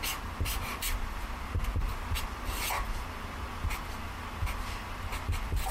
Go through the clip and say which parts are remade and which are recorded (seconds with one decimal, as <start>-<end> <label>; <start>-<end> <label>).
0.0-5.7 recorded